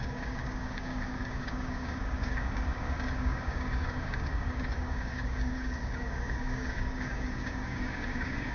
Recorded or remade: remade